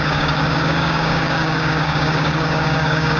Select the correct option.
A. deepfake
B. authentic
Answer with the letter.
A